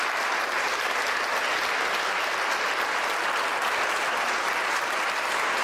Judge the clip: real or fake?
real